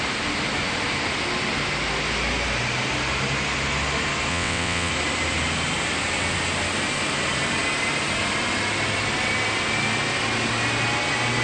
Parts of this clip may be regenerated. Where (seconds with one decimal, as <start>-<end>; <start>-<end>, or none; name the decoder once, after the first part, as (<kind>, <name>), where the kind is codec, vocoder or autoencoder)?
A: 4.3-4.9 (vocoder, WaveNeXt)